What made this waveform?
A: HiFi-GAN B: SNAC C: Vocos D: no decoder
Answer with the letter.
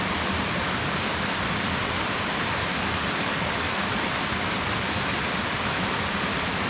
D